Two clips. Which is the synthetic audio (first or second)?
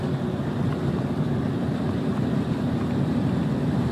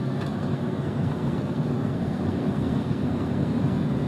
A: second